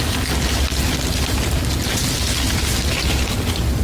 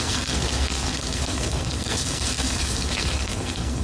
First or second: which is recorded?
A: first